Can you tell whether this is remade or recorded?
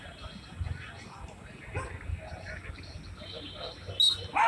recorded